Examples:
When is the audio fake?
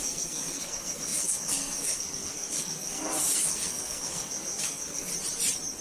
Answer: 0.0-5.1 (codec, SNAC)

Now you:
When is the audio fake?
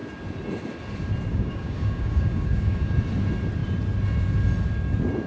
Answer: 1.3-2.9 (codec, DAC)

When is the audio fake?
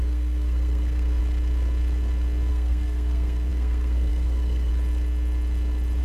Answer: 0.0-1.2 (codec, SNAC); 2.5-4.7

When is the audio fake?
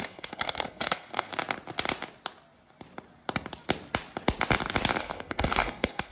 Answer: 0.0-1.3 (codec, SNAC); 5.0-6.1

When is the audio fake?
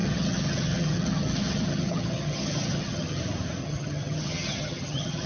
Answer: 0.0-3.2 (vocoder, HiFi-GAN); 3.6-5.3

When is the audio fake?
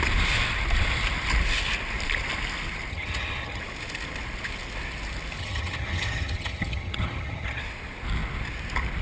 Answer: 2.9-3.6 (vocoder, HiFi-GAN); 5.4-7.6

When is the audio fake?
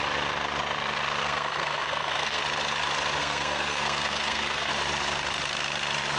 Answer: 1.2-2.4 (codec, SNAC); 3.2-4.7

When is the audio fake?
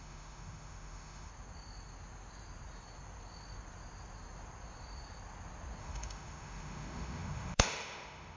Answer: 0.0-1.3 (autoencoder, DAC-VAE); 5.8-8.4